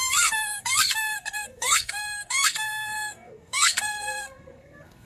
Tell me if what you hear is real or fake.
fake